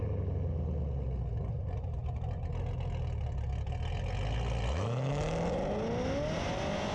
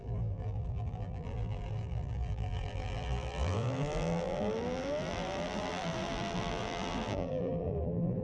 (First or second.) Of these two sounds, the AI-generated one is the second